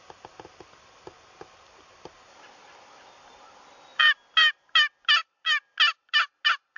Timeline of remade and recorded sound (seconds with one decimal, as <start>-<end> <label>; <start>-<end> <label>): 0.0-6.8 recorded